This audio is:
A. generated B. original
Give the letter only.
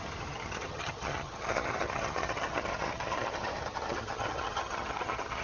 A